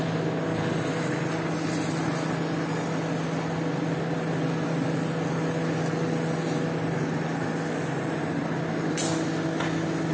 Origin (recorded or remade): recorded